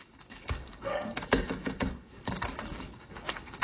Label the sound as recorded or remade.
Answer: remade